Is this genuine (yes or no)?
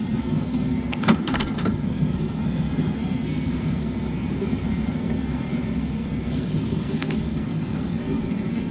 no